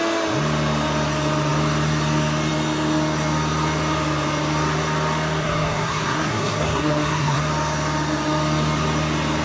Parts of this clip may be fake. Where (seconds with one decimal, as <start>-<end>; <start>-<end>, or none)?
5.4-7.4